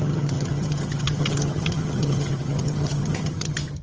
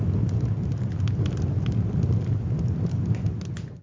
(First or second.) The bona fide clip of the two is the second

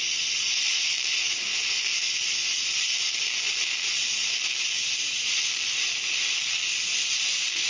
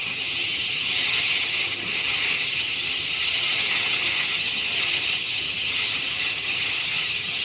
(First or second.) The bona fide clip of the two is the first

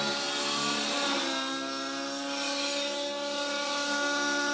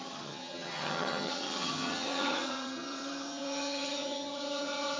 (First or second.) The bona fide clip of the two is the first